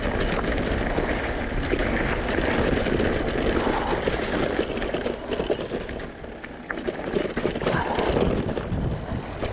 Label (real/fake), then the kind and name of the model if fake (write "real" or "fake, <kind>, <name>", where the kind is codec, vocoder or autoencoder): real